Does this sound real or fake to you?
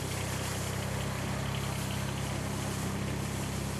real